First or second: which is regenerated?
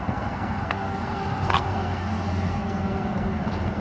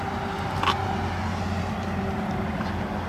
first